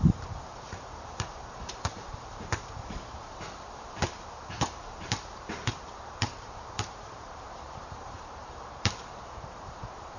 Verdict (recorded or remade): remade